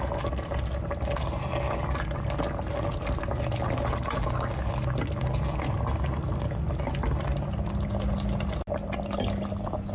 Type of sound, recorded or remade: recorded